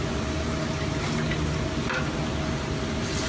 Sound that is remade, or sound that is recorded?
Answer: recorded